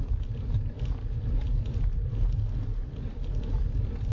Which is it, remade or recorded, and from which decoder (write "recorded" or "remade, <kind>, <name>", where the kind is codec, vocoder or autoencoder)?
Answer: recorded